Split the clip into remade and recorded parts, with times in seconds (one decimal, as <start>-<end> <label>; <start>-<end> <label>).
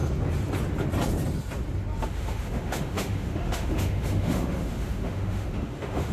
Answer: 0.0-2.0 recorded; 2.0-6.1 remade